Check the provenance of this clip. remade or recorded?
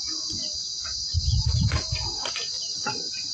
recorded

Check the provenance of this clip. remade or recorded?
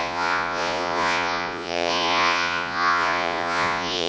remade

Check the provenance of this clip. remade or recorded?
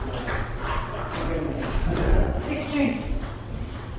remade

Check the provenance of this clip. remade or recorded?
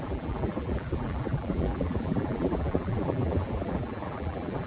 remade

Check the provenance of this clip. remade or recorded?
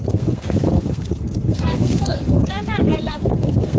remade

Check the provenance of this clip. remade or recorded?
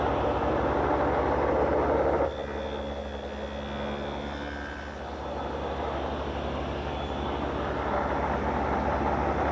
recorded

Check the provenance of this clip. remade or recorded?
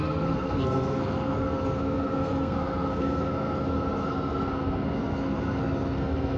remade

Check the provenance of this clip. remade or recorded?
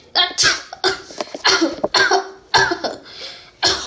recorded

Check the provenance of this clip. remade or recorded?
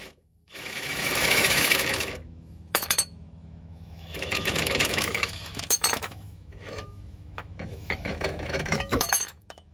remade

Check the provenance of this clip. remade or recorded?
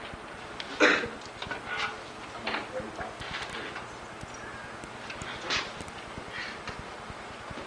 recorded